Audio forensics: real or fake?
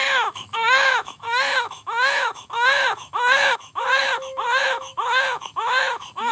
fake